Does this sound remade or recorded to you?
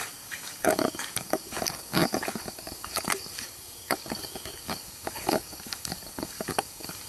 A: remade